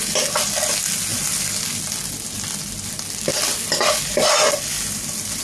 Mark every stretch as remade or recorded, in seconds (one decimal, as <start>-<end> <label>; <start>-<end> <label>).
0.0-5.4 recorded